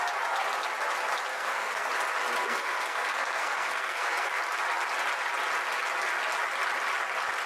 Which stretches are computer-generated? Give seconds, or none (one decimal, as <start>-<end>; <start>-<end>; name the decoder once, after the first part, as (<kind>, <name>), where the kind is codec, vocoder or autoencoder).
1.3-1.9 (codec, SNAC); 2.4-4.4